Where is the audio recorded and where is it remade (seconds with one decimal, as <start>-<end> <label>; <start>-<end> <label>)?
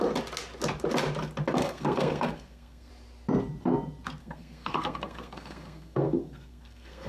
0.0-1.6 recorded; 1.6-2.9 remade; 2.9-4.2 recorded; 4.2-7.1 remade